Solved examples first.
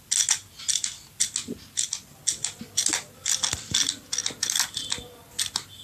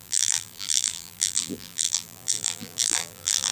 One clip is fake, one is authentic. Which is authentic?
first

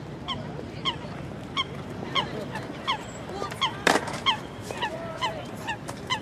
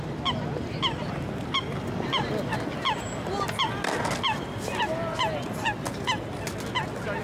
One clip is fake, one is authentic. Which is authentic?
second